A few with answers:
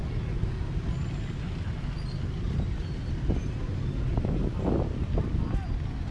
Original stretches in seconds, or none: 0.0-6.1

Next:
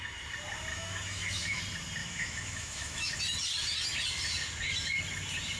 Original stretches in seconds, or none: 0.0-0.7; 1.6-2.0; 3.2-5.6

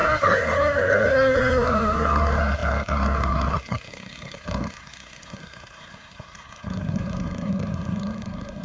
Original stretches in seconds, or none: none

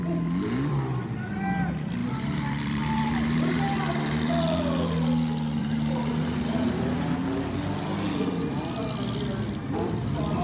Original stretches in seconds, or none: 0.0-2.0; 4.3-5.6; 7.1-10.4

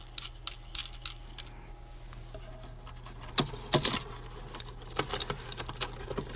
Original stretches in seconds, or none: 0.0-6.4